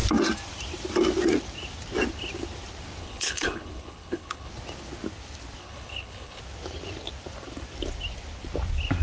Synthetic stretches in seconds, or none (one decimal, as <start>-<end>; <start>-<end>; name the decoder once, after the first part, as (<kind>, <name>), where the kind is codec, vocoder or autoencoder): 3.0-4.5 (codec, HILCodec); 5.6-6.4